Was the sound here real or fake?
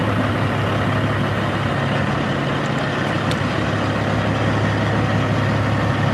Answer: real